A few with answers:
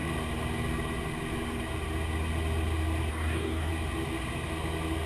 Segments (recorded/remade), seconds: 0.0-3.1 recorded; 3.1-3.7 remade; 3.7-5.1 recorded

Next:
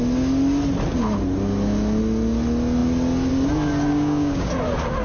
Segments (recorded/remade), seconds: 0.0-3.9 recorded; 3.9-4.5 remade; 4.5-5.0 recorded

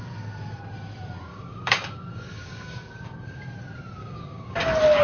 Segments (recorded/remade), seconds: 0.0-1.3 recorded; 1.3-3.4 remade; 3.4-4.0 recorded; 4.0-4.6 remade; 4.6-5.0 recorded

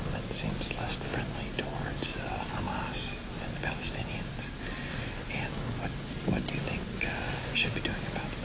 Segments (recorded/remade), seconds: 0.0-8.4 recorded